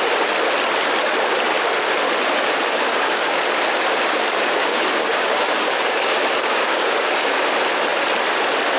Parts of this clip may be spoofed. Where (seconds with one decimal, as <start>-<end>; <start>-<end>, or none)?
2.9-3.4; 4.6-7.4